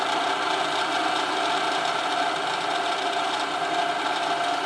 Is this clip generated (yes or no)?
no